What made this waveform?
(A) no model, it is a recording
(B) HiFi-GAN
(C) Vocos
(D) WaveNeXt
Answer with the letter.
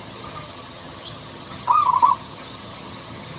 B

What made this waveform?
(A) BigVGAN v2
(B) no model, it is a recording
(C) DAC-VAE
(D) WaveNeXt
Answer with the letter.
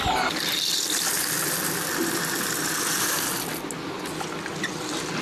B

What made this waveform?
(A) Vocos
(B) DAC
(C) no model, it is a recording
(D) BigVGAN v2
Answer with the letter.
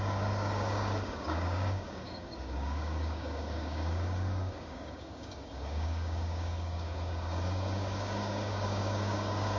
B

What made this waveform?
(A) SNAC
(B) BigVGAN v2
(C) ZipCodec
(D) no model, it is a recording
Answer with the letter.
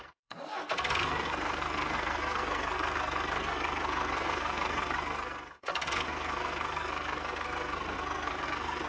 A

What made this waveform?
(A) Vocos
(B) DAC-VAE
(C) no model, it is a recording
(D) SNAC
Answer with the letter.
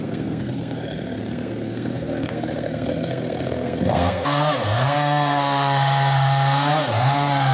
D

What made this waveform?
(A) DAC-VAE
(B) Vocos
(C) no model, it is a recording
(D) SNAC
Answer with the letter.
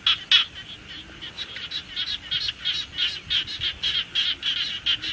C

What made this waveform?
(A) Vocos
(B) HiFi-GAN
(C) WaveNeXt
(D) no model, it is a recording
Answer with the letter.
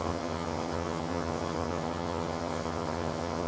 B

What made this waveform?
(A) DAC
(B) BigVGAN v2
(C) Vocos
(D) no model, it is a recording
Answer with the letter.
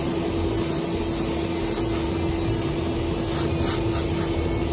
D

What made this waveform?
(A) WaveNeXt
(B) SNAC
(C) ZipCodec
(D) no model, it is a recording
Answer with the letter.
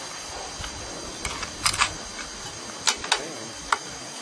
D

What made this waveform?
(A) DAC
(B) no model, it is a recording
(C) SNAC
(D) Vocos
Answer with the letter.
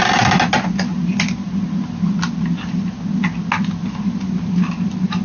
B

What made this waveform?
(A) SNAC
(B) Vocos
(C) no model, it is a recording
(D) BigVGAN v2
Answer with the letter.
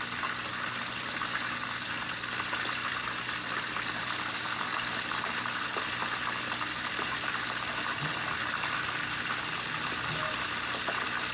C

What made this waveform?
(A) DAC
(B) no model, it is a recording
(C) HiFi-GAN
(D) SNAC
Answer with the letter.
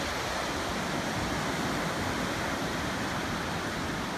B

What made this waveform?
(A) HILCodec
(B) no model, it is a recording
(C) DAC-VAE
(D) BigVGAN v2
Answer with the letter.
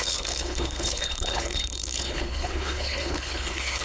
A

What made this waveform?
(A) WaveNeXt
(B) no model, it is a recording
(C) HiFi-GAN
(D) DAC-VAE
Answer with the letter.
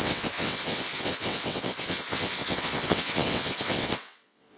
A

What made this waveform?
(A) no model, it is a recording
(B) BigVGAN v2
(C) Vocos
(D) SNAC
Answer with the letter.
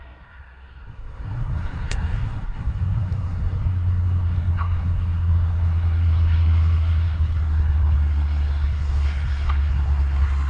D